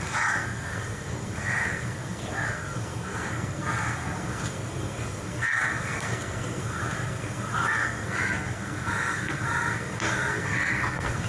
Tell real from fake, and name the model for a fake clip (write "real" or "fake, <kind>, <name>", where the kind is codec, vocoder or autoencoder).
fake, codec, SNAC